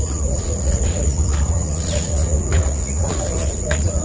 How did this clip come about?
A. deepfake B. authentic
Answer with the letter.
A